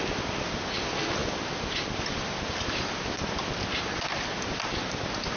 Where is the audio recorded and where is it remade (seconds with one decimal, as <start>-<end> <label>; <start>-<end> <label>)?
0.0-5.4 recorded